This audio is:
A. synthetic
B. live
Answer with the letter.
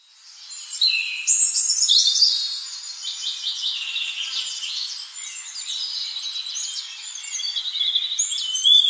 B